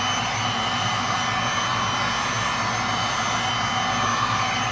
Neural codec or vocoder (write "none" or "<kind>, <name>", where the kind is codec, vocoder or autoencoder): none